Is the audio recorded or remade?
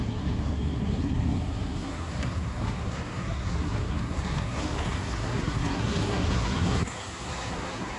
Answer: remade